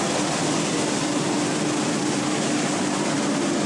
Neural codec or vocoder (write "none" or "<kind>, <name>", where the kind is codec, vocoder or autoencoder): none